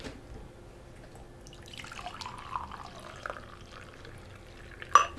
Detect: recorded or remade recorded